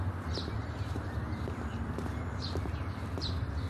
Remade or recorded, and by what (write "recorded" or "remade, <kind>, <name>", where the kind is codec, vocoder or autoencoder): remade, vocoder, BigVGAN v2